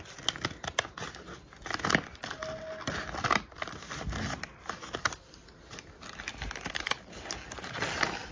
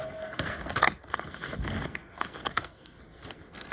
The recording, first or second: first